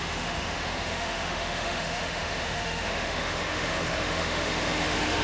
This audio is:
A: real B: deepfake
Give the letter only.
B